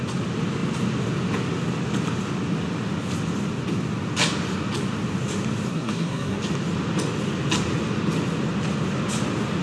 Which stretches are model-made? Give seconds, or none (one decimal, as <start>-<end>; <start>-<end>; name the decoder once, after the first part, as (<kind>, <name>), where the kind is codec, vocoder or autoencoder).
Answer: 5.7-6.4 (codec, SNAC)